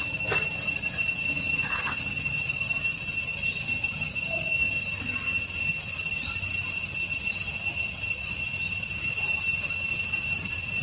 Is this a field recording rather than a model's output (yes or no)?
yes